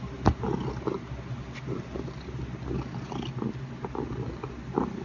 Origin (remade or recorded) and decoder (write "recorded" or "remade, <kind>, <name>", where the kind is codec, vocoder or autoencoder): recorded